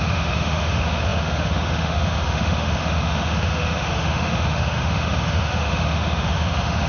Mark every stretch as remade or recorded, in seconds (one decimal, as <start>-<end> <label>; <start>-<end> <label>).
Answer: 0.0-6.9 remade